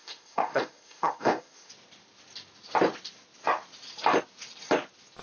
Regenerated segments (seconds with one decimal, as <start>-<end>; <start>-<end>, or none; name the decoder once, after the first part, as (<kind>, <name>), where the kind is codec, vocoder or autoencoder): 0.0-1.7 (codec, ZipCodec)